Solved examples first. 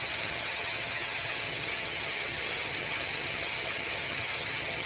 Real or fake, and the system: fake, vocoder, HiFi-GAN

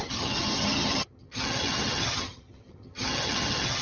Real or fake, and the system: fake, vocoder, HiFi-GAN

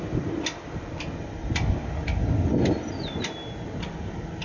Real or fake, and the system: real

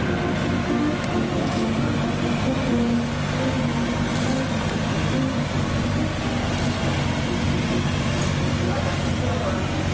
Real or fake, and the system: real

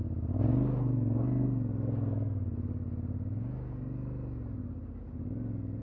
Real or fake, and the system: real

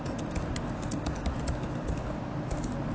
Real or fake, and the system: real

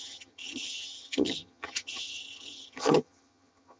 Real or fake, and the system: fake, vocoder, HiFi-GAN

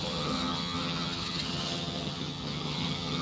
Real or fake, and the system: fake, vocoder, HiFi-GAN